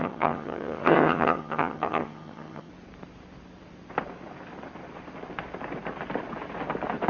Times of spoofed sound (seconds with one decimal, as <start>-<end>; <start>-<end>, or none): 0.0-2.7

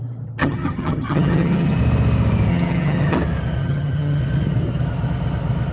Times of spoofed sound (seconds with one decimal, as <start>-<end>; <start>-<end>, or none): 0.4-1.8; 2.5-3.2; 3.6-4.2

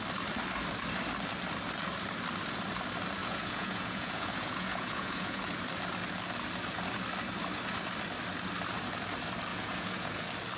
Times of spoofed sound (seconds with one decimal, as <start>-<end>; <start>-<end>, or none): 3.2-5.4; 9.5-10.2